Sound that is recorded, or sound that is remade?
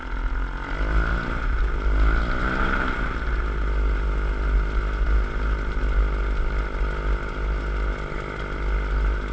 recorded